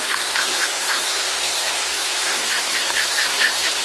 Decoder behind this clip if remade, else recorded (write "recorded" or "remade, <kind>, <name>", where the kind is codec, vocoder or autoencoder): remade, codec, SNAC